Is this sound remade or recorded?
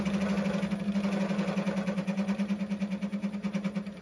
recorded